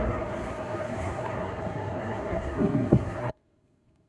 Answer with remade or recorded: remade